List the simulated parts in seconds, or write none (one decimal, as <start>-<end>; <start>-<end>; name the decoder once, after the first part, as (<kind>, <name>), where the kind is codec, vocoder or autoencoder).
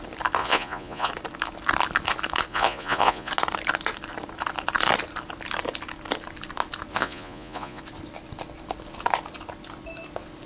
0.4-1.1 (vocoder, Vocos); 2.5-3.3; 6.9-7.8